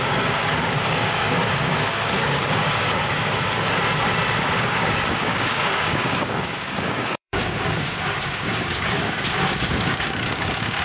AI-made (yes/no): yes